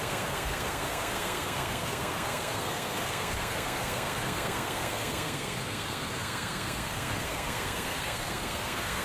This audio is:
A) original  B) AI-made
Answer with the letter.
B